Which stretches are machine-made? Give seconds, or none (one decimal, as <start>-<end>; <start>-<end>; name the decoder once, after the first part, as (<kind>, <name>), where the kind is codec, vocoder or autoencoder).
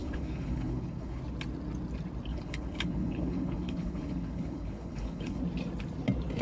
0.0-1.2 (codec, HILCodec); 2.3-5.4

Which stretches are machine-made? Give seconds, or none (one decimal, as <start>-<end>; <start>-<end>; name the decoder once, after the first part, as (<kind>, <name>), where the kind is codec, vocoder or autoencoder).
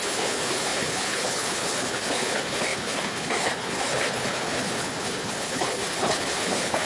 0.0-6.9 (codec, HILCodec)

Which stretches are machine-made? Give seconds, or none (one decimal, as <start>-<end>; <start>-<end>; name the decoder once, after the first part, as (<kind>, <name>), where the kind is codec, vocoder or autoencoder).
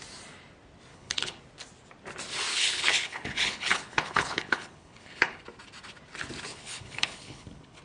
0.9-1.4 (codec, HILCodec); 2.5-5.4; 6.5-7.8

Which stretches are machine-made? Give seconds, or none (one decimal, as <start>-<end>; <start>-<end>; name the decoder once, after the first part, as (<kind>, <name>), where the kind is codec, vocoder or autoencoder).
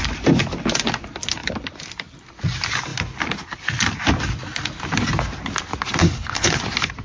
6.0-6.6 (codec, HILCodec)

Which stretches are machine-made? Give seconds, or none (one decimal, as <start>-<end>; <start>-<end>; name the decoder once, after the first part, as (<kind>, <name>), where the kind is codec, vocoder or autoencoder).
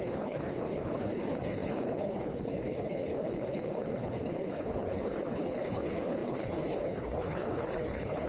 0.0-8.3 (codec, HILCodec)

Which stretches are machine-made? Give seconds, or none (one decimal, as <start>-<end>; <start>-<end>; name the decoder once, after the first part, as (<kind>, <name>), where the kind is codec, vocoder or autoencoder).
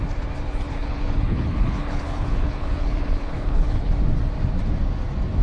0.7-3.9 (codec, HILCodec)